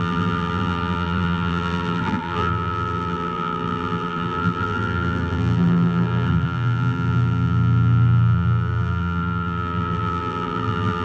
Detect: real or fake fake